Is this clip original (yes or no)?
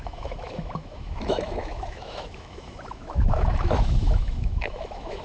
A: no